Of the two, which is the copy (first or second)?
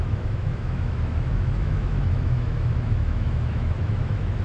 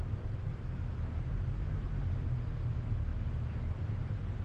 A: first